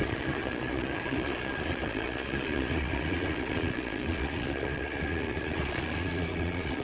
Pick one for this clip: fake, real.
fake